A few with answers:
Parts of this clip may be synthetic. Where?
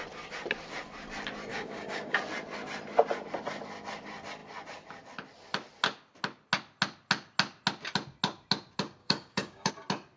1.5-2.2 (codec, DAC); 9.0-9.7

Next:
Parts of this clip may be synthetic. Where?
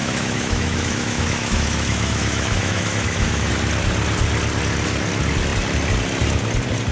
0.0-3.5 (autoencoder, DAC-VAE)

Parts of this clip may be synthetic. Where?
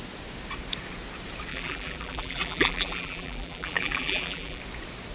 1.5-4.6 (vocoder, BigVGAN v2)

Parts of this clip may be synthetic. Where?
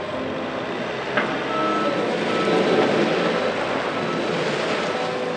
none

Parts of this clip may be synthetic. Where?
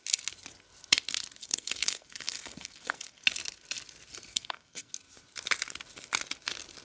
1.4-3.2 (codec, SNAC); 4.3-4.9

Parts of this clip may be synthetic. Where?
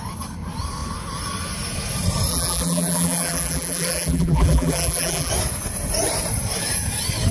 2.3-5.3 (vocoder, BigVGAN v2)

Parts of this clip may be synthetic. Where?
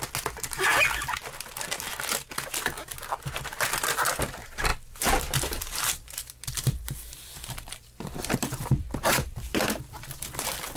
4.7-9.6 (vocoder, BigVGAN v2)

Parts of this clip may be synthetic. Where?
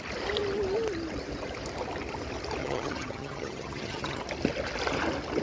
2.6-4.2 (vocoder, HiFi-GAN)